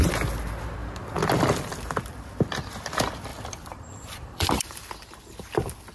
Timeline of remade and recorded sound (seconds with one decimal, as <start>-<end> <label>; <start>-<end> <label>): 0.0-3.3 recorded; 3.3-4.9 remade; 4.9-5.9 recorded